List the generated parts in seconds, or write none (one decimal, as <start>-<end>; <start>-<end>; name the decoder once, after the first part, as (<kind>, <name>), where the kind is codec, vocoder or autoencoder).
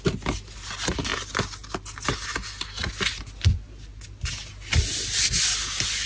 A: none